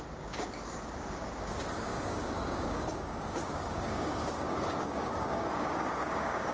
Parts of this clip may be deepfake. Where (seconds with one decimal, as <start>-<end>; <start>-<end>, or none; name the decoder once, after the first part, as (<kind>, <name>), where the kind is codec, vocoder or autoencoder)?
0.0-6.5 (codec, DAC)